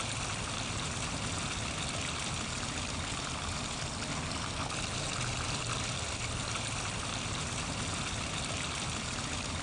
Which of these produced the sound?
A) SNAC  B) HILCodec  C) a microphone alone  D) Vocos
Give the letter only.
C